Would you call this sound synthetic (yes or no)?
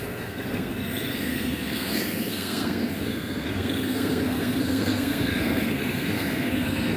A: yes